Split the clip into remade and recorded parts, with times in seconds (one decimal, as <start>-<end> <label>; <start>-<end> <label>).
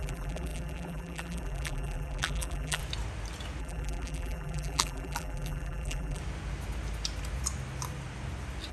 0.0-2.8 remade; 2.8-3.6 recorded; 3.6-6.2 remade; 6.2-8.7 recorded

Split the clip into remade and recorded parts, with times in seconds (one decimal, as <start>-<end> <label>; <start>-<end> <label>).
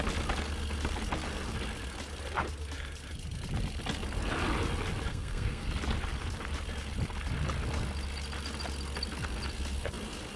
0.0-5.1 recorded; 5.1-5.7 remade; 5.7-10.4 recorded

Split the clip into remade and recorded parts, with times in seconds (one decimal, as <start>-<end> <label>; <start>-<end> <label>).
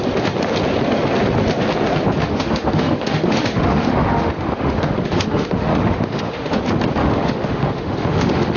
0.0-2.2 recorded; 2.2-6.6 remade; 6.6-7.0 recorded; 7.0-8.6 remade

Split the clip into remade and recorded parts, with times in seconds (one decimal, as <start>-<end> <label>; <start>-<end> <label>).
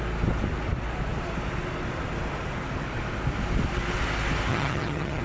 0.0-4.5 recorded; 4.5-5.2 remade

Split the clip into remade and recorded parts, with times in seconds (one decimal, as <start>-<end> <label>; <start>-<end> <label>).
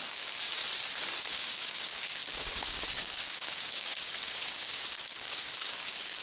0.0-0.6 remade; 0.6-1.3 recorded; 1.3-6.2 remade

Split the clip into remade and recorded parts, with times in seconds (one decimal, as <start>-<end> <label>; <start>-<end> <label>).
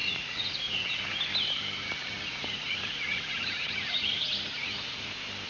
0.0-1.2 remade; 1.2-1.8 recorded; 1.8-5.1 remade; 5.1-5.5 recorded